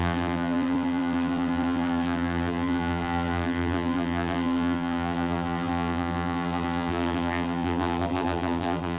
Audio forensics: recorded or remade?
remade